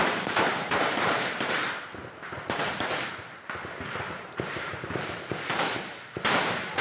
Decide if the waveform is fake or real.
fake